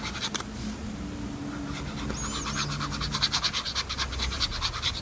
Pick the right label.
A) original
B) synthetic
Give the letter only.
A